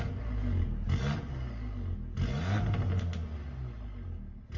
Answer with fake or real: real